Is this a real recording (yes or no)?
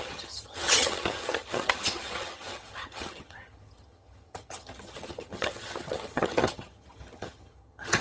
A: no